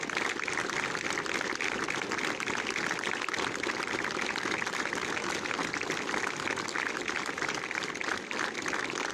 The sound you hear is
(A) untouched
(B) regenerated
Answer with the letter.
A